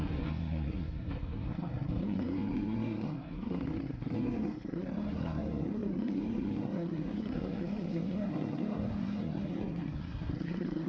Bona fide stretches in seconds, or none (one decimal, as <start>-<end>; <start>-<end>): none